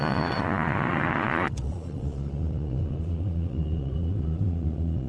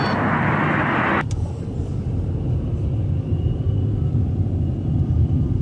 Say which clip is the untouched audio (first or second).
second